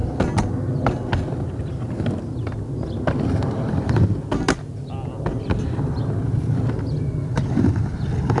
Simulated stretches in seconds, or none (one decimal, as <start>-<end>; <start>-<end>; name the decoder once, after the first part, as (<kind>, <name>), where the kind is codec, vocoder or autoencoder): none